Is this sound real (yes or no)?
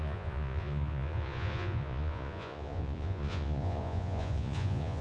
no